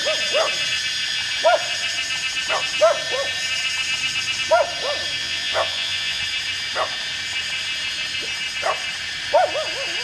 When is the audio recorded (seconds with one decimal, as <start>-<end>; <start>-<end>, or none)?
0.0-5.2; 6.2-10.0